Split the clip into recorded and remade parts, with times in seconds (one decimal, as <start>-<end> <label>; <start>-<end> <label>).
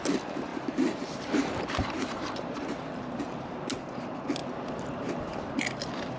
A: 0.0-0.5 recorded; 0.5-3.2 remade; 3.2-6.2 recorded